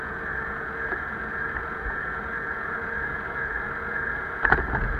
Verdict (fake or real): fake